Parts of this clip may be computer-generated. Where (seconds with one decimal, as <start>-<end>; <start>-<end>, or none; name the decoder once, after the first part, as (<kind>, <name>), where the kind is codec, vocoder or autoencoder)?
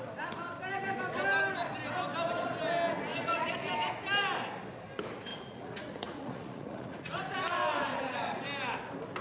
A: 3.1-3.7 (vocoder, Vocos); 5.3-7.2; 7.9-8.4